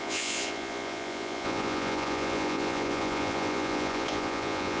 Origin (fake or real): fake